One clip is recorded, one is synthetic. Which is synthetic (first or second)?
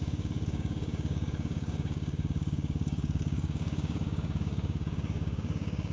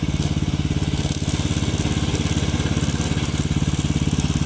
first